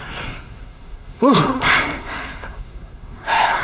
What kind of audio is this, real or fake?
fake